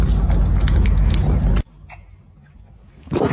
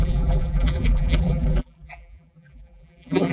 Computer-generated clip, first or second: second